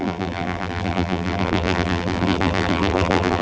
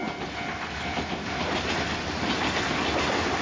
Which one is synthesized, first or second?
first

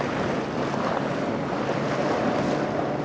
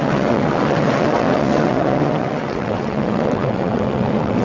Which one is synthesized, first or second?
second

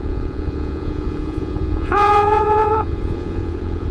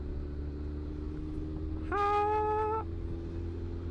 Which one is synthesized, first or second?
first